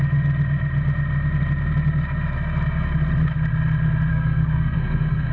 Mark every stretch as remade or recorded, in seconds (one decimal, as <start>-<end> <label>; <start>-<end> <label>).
0.0-4.1 recorded; 4.1-5.3 remade